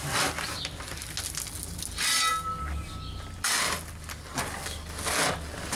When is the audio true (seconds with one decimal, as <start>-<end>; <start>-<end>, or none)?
0.0-5.8